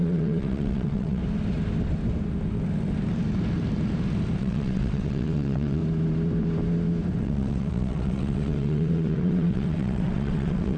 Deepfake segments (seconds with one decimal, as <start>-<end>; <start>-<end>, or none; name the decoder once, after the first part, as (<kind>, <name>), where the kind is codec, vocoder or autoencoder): 0.0-1.2 (vocoder, WaveNeXt); 4.4-5.8; 7.2-10.8